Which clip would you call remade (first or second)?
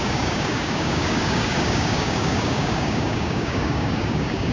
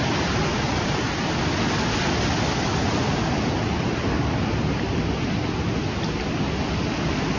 first